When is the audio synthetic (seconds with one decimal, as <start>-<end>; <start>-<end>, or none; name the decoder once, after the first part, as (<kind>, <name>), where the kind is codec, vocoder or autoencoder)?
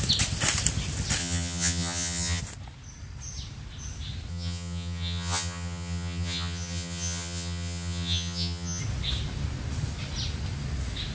1.2-2.4 (vocoder, HiFi-GAN); 4.3-8.8